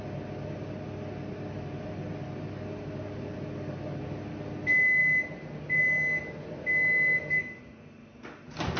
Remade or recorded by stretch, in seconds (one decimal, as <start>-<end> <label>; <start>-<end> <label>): 0.0-8.8 recorded